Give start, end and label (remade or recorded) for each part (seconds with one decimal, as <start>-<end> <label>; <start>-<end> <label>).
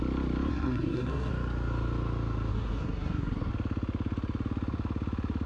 0.0-0.5 recorded; 0.5-1.3 remade; 1.3-2.5 recorded; 2.5-3.5 remade; 3.5-5.5 recorded